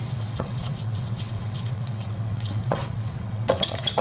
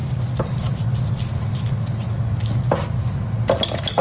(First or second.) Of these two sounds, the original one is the second